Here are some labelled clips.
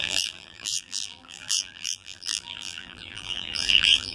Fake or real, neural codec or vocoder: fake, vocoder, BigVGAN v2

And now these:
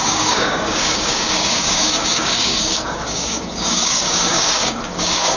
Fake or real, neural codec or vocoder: fake, codec, DAC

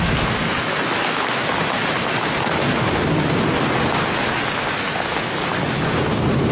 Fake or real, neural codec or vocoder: real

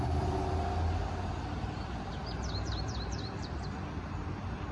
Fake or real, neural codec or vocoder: fake, vocoder, BigVGAN v2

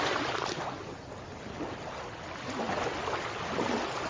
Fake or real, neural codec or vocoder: real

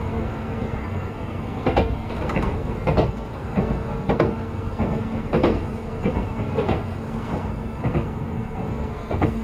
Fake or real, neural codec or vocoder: fake, codec, SNAC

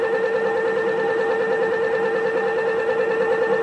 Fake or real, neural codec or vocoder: real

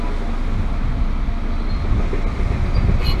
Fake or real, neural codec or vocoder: real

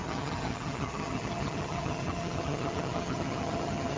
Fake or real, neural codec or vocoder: fake, vocoder, HiFi-GAN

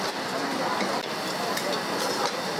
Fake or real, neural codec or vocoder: real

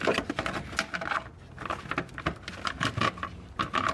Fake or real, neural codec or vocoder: real